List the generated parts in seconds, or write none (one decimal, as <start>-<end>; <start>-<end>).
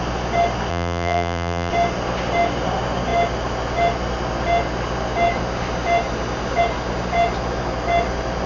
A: 0.7-1.7